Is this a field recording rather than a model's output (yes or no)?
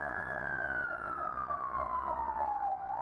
no